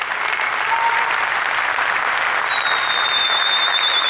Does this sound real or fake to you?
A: real